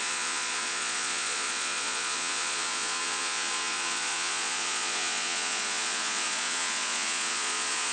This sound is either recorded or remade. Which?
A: remade